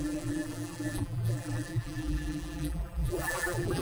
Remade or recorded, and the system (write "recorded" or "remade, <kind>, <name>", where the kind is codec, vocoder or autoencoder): remade, vocoder, BigVGAN v2